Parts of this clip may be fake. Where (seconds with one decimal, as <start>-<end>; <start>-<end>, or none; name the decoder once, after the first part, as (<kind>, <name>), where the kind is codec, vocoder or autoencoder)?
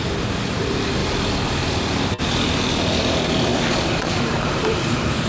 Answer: 1.0-2.9 (vocoder, BigVGAN v2); 3.5-5.3